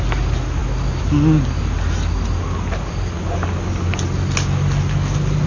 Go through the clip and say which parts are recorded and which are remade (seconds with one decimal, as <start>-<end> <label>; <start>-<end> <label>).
0.0-5.5 recorded

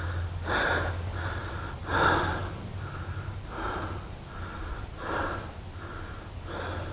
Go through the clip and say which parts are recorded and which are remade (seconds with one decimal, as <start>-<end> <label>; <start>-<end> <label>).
0.0-6.9 recorded

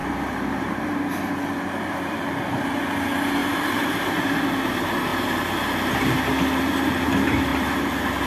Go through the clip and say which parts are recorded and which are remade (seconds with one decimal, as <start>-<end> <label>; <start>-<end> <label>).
0.0-1.0 remade; 1.0-3.4 recorded; 3.4-4.5 remade; 4.5-8.3 recorded

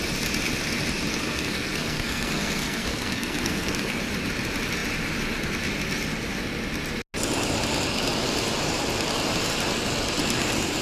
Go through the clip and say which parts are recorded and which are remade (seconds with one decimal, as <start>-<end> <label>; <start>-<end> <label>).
0.0-1.1 recorded; 1.1-4.0 remade; 4.0-10.8 recorded

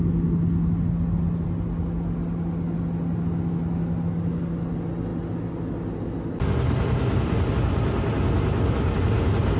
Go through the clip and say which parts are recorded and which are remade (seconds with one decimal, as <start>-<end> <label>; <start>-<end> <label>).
0.0-9.6 recorded

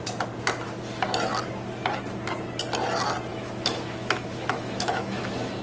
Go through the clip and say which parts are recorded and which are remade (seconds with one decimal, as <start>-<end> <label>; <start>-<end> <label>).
0.0-3.3 recorded; 3.3-5.6 remade